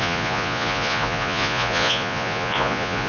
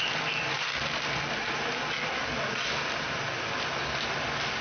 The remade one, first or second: first